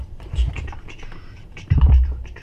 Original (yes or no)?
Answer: no